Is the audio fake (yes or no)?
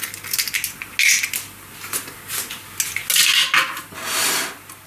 no